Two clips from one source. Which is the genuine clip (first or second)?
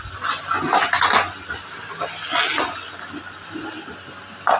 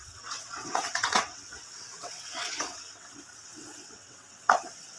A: first